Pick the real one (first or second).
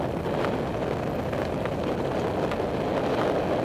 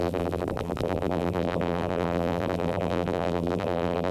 first